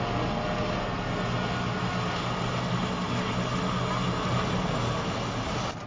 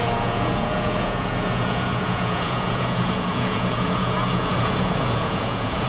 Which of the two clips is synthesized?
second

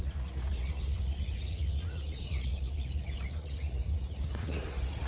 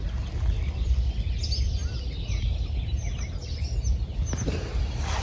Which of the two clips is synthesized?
first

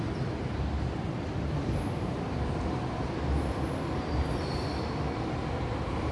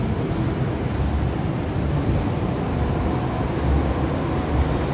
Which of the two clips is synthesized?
first